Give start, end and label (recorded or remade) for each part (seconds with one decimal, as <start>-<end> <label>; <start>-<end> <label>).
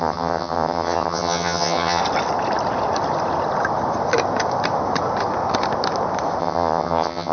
0.0-2.0 remade; 2.0-6.4 recorded; 6.4-7.3 remade